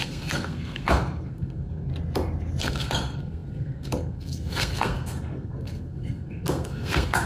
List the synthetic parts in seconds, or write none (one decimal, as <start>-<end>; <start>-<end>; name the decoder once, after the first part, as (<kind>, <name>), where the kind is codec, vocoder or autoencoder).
0.0-1.9 (codec, SNAC); 2.6-7.3